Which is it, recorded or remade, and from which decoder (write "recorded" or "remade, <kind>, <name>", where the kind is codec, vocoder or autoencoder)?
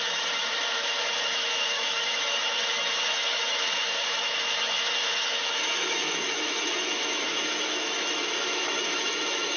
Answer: remade, autoencoder, DAC-VAE